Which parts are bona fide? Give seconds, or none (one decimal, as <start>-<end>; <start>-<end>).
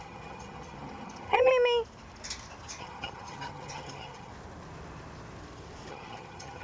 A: 1.5-2.8; 4.3-5.9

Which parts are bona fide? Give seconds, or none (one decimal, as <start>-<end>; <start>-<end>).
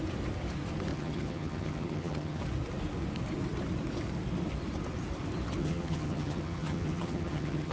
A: 0.0-0.9; 2.4-5.6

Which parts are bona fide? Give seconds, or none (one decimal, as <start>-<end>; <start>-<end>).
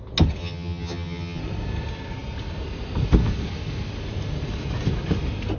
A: 0.0-0.4; 1.4-5.6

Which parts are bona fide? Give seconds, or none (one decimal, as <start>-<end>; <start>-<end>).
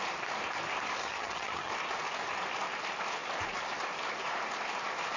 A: 0.0-1.0; 1.7-5.2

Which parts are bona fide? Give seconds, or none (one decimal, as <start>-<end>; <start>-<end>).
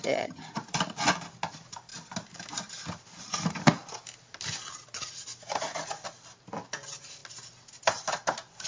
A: 0.5-8.7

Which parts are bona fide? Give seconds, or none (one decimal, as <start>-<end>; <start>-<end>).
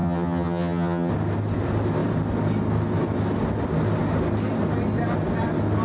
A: 1.1-5.8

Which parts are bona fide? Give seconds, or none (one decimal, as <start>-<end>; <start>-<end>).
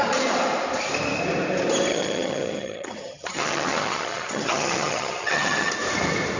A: 0.0-1.9; 5.7-6.4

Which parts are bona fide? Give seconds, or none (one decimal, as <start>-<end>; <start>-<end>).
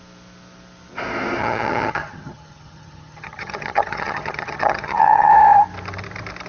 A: 0.0-1.4; 5.3-6.5